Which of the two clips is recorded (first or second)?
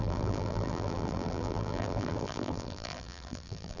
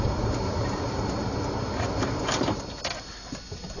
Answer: second